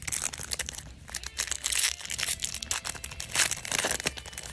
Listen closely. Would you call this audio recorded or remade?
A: recorded